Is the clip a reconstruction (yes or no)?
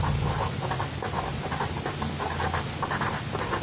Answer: no